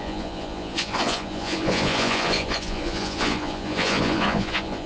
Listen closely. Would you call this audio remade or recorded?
remade